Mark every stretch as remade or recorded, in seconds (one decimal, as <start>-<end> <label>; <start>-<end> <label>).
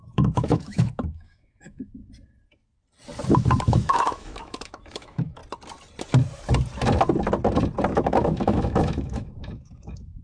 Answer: 0.0-2.0 remade; 2.0-3.6 recorded; 3.6-5.4 remade; 5.4-7.9 recorded; 7.9-10.2 remade